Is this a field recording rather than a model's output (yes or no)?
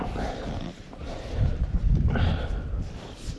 no